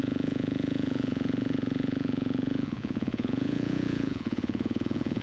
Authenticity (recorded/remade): remade